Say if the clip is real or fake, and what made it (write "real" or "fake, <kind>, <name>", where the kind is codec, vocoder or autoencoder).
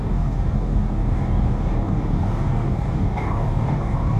fake, codec, DAC